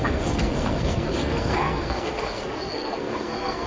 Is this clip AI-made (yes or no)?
yes